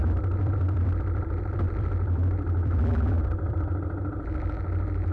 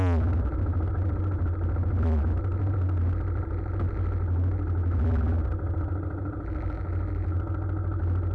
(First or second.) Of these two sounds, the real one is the second